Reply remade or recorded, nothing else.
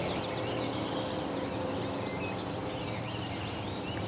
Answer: recorded